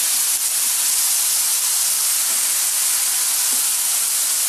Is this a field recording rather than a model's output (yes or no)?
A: yes